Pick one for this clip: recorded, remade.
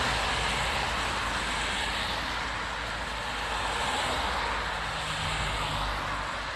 recorded